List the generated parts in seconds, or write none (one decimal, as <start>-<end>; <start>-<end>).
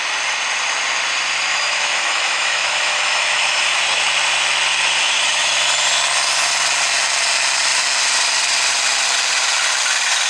1.5-3.8; 5.0-5.5